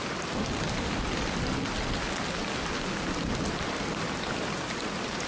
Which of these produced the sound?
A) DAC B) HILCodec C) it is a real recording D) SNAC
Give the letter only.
C